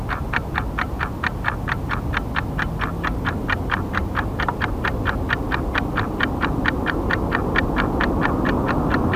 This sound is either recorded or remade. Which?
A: recorded